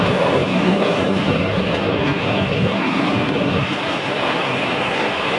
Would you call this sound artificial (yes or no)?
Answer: yes